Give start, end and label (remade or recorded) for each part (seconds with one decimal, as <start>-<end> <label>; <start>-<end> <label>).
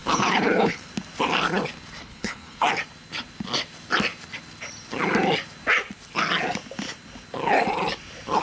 0.0-0.9 remade; 0.9-2.0 recorded; 2.0-2.7 remade; 2.7-8.4 recorded